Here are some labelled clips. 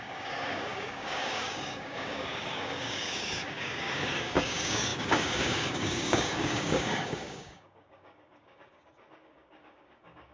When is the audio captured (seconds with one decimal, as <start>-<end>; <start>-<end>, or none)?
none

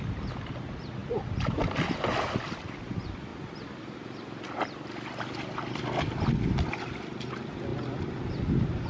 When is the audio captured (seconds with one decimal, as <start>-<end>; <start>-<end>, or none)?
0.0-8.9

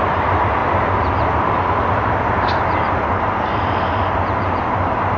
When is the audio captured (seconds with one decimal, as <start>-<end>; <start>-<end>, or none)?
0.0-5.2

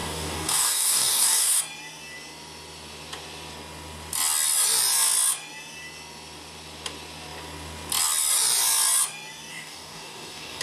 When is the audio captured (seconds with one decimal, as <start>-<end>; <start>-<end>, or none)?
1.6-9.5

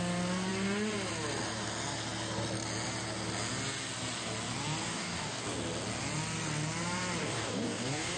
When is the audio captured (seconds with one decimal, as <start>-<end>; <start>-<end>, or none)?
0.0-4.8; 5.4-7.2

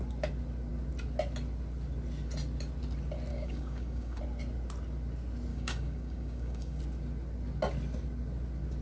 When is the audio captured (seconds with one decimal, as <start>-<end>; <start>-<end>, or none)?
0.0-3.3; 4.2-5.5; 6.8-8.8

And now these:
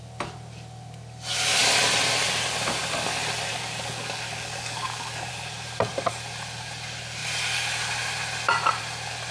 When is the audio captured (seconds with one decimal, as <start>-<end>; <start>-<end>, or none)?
0.0-3.5; 5.3-9.3